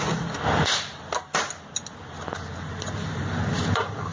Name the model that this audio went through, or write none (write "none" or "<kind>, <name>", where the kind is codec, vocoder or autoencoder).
none